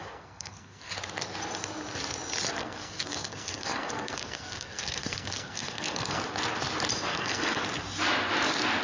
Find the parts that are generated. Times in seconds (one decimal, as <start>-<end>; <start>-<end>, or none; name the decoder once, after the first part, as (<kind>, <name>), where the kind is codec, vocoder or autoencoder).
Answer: 0.0-0.9 (codec, SNAC); 2.6-6.2; 7.1-7.6

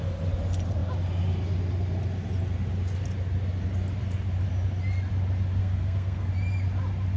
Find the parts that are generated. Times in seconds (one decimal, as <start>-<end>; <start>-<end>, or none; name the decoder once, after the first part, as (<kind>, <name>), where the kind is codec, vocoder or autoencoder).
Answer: 5.6-6.3 (codec, SNAC)

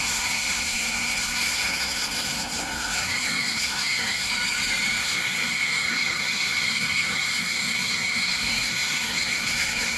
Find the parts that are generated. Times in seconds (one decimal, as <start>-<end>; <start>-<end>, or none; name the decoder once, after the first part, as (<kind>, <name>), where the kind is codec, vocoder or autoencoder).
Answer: 0.0-4.3 (codec, SNAC); 5.0-10.0